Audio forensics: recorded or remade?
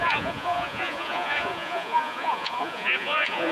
remade